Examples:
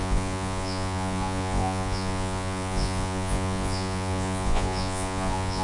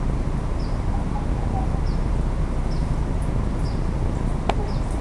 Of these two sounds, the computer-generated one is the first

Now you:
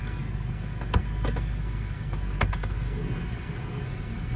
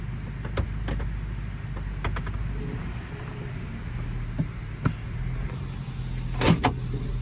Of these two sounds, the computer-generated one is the first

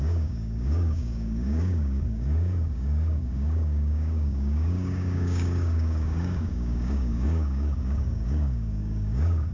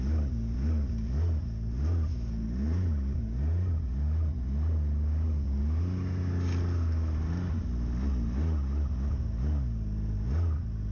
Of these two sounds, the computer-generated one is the first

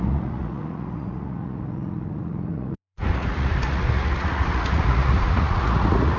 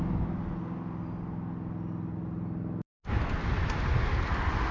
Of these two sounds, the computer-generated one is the first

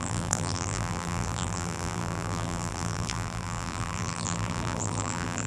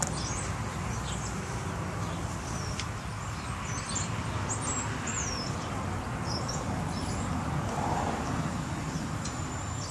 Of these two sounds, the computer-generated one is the first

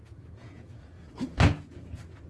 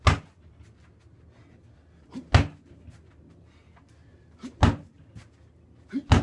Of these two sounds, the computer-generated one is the first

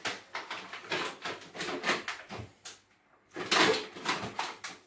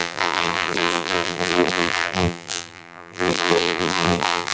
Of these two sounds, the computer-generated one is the second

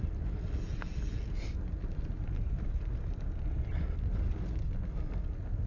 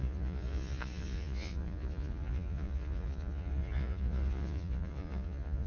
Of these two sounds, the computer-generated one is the second